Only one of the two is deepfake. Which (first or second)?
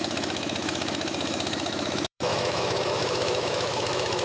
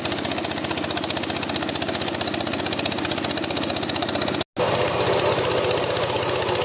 first